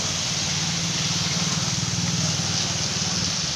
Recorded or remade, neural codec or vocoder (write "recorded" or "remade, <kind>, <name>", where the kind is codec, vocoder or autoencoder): recorded